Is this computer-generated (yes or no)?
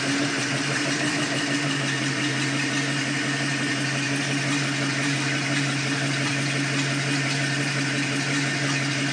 no